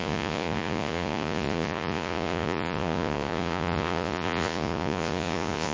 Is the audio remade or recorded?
remade